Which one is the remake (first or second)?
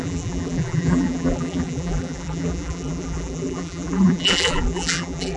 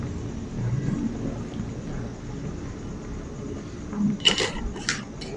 first